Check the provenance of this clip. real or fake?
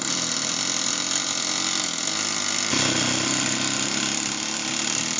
real